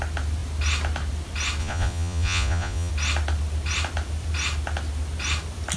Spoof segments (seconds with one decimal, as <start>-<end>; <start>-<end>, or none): 1.6-2.9